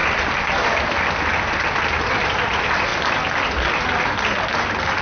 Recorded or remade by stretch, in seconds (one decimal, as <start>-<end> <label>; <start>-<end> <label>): 0.0-5.0 recorded